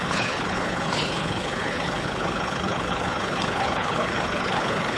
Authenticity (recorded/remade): remade